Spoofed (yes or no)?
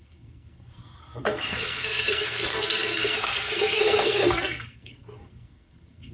yes